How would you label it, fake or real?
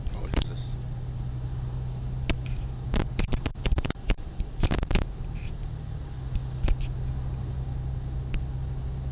real